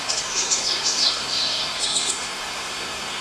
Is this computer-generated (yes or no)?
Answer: yes